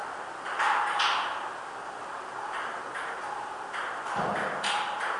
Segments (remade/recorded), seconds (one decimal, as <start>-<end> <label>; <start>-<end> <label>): 0.0-3.1 recorded; 3.1-5.2 remade